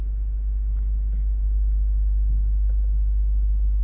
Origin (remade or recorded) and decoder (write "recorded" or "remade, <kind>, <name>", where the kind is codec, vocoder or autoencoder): recorded